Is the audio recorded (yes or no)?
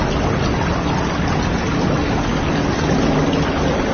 yes